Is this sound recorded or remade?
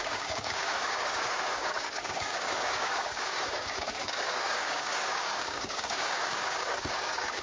remade